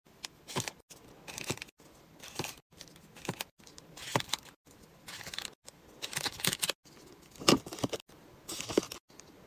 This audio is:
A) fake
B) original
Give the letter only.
B